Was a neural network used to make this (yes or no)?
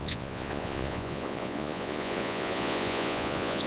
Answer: yes